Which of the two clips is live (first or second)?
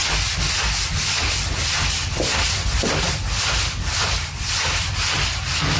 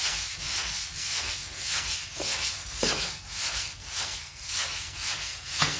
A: first